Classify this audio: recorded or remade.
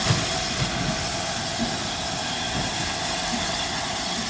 recorded